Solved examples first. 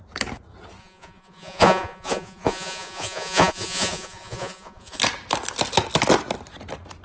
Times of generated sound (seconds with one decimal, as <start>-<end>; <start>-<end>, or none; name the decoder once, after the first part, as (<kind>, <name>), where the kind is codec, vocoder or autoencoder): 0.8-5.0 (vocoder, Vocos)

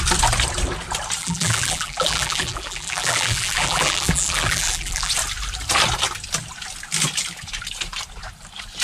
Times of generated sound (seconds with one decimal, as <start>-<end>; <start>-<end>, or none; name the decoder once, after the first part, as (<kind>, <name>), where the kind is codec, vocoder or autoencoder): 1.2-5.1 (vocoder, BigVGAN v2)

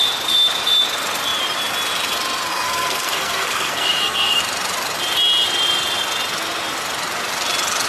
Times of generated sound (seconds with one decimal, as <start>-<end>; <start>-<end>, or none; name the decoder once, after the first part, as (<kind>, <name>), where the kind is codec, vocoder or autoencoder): 2.5-4.4 (codec, SNAC)

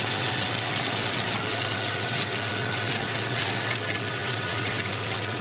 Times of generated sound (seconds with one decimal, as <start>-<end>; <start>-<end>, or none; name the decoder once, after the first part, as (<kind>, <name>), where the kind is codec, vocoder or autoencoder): 0.0-5.4 (vocoder, WaveNeXt)

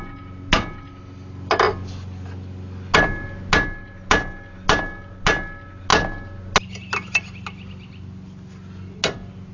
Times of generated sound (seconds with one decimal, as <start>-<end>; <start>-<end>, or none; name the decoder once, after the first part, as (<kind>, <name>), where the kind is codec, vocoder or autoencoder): none

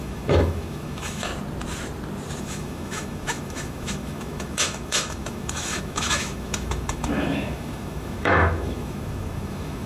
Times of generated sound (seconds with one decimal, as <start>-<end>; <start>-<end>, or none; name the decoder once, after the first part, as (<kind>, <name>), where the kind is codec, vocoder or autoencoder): 0.0-1.3 (autoencoder, DAC-VAE); 2.4-9.9